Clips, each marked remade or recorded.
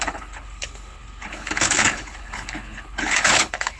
remade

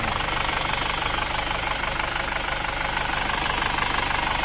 remade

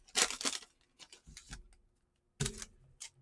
recorded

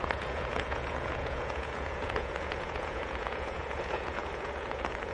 remade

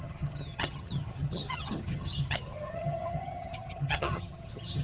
remade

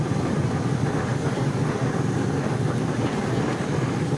recorded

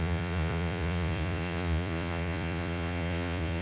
remade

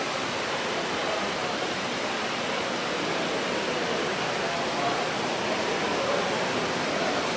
recorded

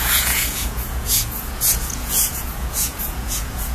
remade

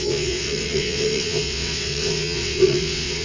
remade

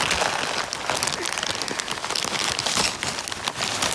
recorded